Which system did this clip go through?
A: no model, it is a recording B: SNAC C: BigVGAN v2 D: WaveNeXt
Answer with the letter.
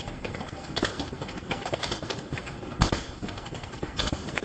B